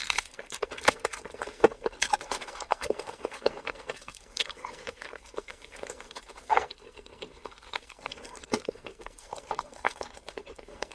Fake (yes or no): yes